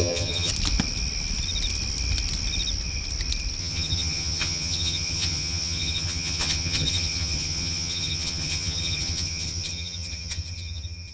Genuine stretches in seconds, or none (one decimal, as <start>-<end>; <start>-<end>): 0.5-3.6